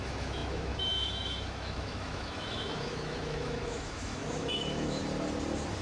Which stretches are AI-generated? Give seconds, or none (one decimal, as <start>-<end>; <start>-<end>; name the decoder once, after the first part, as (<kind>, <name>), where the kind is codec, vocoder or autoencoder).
0.0-5.0 (autoencoder, DAC-VAE)